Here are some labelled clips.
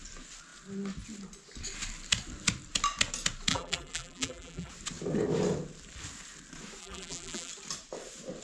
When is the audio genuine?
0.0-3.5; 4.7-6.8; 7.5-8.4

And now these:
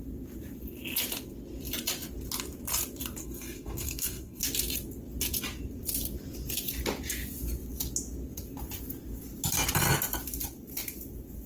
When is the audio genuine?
0.0-3.2; 4.4-11.5